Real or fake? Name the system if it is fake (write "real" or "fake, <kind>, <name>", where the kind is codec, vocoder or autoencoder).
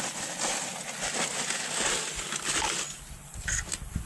real